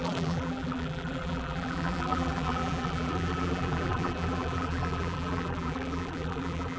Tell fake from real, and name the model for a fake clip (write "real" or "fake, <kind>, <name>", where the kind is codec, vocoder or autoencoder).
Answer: fake, vocoder, BigVGAN v2